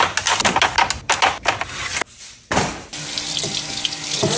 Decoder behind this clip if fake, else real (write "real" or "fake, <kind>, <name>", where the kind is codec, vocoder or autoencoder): real